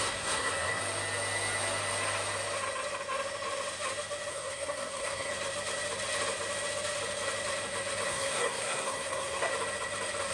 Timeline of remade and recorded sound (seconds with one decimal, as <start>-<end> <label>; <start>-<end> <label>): 0.0-0.8 remade; 0.8-4.3 recorded; 4.3-5.3 remade; 5.3-8.1 recorded; 8.1-9.5 remade; 9.5-10.3 recorded